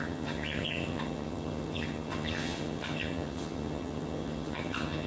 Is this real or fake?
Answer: fake